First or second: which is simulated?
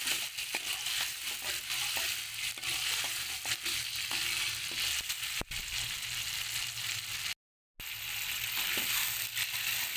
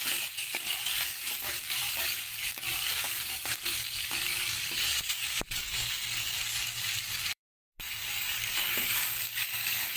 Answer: second